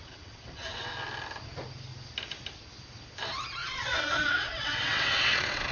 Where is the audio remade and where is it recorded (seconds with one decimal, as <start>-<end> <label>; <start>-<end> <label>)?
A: 0.0-0.9 remade; 0.9-3.6 recorded; 3.6-5.7 remade